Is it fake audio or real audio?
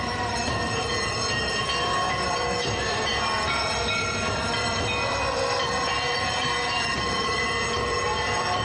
fake